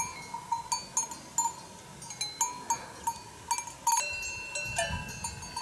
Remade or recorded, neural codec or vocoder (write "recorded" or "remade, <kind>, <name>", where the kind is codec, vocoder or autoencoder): recorded